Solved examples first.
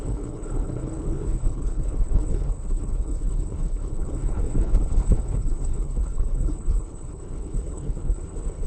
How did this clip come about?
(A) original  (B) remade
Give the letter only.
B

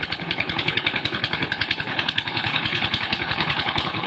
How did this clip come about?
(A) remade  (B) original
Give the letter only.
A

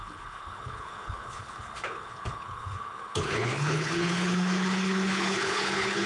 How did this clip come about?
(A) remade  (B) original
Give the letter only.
A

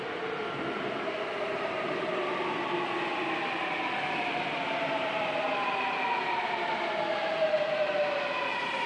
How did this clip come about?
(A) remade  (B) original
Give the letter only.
B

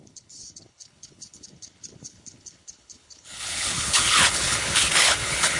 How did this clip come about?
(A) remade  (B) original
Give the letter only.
A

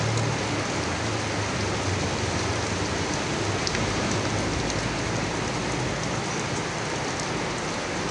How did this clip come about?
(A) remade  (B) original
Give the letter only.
B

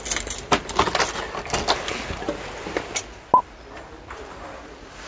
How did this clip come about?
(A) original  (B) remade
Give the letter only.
A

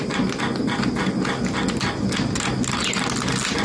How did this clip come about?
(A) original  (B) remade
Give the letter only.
A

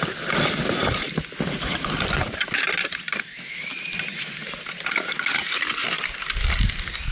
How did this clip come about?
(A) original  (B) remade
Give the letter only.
A